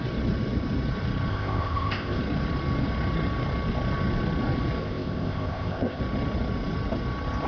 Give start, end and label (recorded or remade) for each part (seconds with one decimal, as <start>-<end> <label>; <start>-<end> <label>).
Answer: 0.0-1.3 recorded; 1.3-2.2 remade; 2.2-4.8 recorded; 4.8-6.0 remade; 6.0-7.5 recorded